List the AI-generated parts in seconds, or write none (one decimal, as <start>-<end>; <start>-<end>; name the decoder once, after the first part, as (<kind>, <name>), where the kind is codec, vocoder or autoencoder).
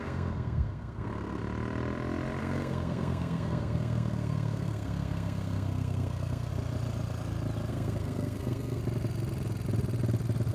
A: 0.0-1.4 (codec, SNAC); 2.4-6.5; 7.7-8.8